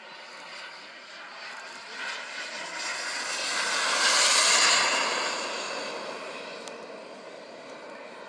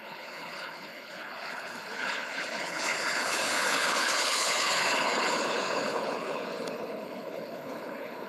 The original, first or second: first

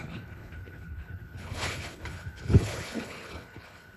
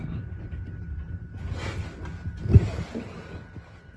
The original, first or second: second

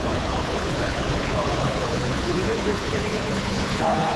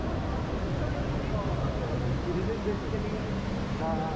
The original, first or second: second